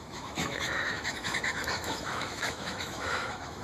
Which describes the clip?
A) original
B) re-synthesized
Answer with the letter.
B